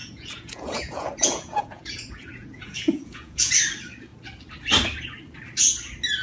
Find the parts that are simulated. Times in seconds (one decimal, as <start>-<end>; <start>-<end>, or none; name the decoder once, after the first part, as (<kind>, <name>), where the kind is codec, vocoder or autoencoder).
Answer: 0.0-3.5 (vocoder, Vocos)